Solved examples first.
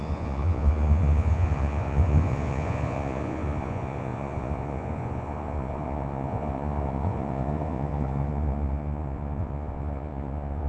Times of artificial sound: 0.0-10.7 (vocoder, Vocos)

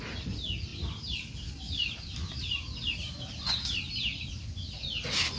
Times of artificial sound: none

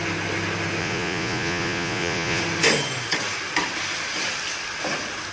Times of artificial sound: 0.8-2.4 (vocoder, Vocos)

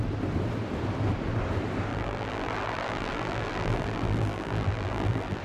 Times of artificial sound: 1.9-5.4 (vocoder, BigVGAN v2)